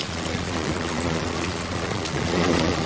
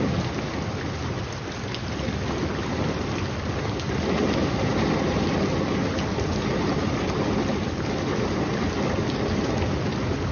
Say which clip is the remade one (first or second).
first